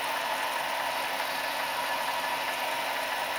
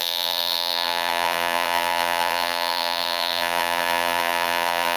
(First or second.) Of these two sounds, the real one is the first